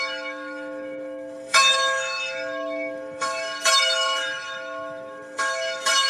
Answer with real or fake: fake